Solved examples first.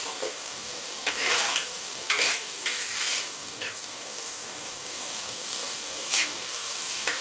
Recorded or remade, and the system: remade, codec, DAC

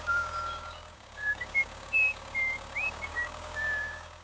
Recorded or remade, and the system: remade, codec, DAC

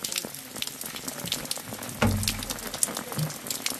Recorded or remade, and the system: recorded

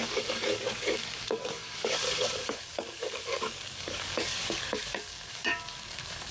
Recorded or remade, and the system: remade, codec, DAC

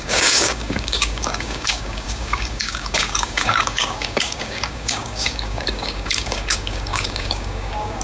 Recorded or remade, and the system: remade, codec, DAC